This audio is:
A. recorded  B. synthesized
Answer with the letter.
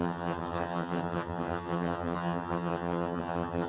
B